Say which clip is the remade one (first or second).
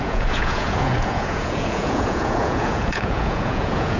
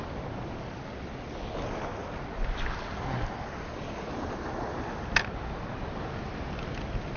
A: first